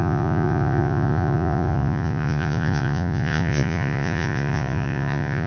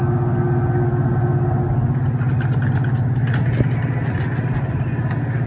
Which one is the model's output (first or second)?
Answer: first